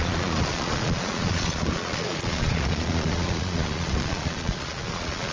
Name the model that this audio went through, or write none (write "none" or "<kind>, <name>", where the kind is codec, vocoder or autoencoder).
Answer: vocoder, Vocos